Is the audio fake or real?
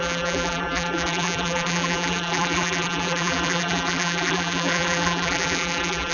fake